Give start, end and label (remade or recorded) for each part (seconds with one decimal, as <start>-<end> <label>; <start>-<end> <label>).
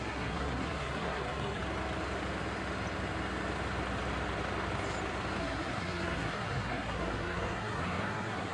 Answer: 0.0-1.6 remade; 1.6-5.4 recorded; 5.4-8.5 remade